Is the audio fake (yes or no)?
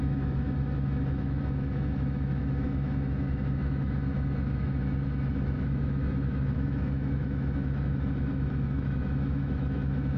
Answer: yes